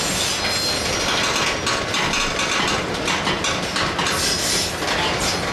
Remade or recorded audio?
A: recorded